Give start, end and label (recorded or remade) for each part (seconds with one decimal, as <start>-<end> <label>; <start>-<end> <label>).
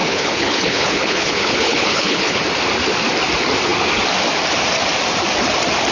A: 0.0-2.4 remade; 2.4-5.9 recorded